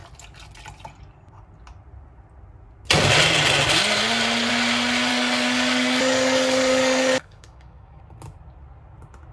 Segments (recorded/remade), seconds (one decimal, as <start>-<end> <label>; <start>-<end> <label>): 0.0-5.1 recorded; 5.1-8.0 remade; 8.0-9.3 recorded